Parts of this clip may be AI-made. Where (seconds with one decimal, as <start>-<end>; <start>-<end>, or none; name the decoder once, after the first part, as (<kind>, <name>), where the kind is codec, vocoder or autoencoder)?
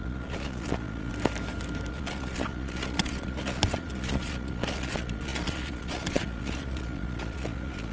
0.0-1.1 (vocoder, Vocos); 1.9-7.9